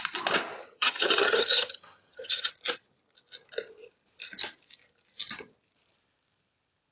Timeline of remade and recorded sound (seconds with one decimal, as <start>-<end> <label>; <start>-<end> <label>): 0.0-0.6 recorded; 0.6-2.5 remade; 2.5-6.9 recorded